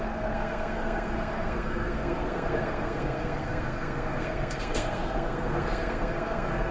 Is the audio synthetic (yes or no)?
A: yes